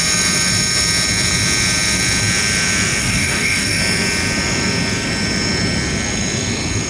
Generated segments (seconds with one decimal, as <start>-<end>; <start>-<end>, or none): 3.0-3.8